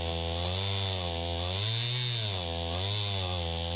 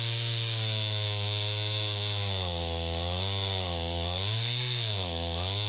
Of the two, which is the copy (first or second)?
second